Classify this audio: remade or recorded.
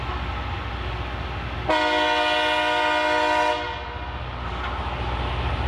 recorded